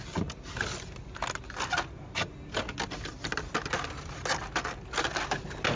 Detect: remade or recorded recorded